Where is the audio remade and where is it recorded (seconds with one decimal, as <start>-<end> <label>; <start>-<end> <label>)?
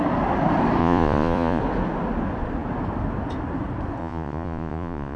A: 0.0-0.8 recorded; 0.8-1.6 remade; 1.6-4.0 recorded; 4.0-5.2 remade